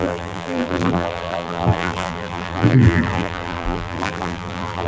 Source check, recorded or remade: remade